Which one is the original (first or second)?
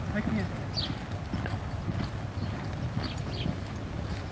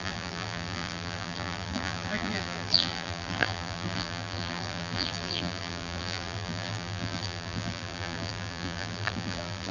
first